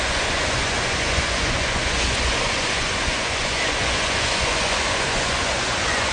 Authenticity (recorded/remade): remade